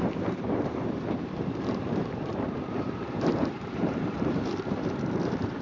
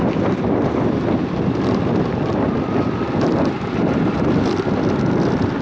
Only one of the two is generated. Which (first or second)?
first